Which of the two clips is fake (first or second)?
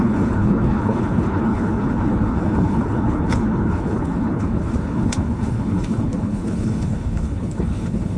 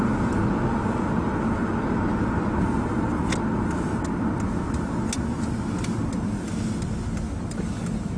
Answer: first